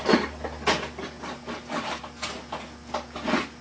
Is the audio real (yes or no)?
yes